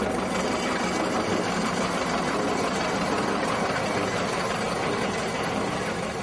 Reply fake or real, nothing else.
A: real